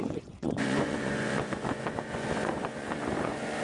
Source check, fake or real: fake